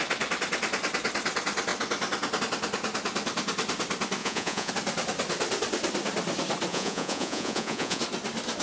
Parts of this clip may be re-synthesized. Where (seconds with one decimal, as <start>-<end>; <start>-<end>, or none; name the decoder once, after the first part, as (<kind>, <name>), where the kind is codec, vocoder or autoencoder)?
4.2-4.7 (vocoder, Vocos); 6.7-8.0